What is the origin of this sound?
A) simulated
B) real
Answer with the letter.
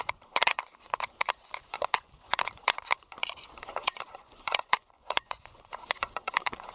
A